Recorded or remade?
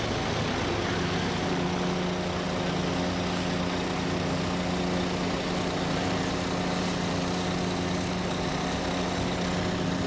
recorded